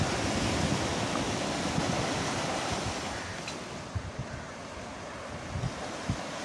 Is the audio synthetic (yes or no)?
no